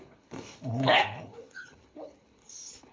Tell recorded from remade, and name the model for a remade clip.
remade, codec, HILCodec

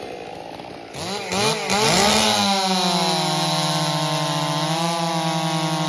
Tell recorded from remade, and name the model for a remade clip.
recorded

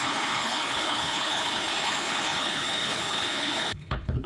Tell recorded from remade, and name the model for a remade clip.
remade, codec, HILCodec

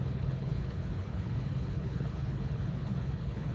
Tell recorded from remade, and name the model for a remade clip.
remade, codec, HILCodec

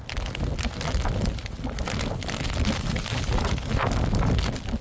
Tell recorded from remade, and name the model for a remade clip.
recorded